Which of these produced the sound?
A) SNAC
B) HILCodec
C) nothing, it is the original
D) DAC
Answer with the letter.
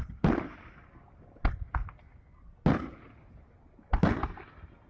C